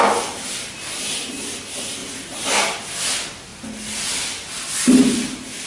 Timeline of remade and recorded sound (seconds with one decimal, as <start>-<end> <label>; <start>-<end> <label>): 0.0-2.0 recorded; 2.0-2.8 remade; 2.8-5.7 recorded